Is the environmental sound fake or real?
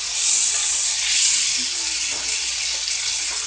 real